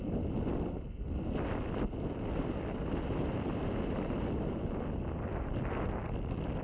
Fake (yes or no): no